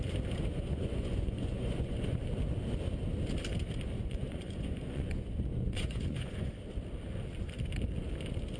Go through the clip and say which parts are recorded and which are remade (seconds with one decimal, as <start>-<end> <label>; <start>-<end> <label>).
0.0-0.5 recorded; 0.5-2.2 remade; 2.2-4.0 recorded; 4.0-6.5 remade; 6.5-8.6 recorded